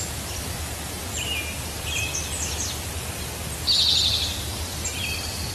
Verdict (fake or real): real